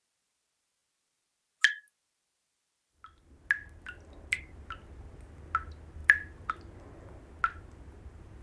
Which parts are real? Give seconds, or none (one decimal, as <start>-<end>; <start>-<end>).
0.0-8.4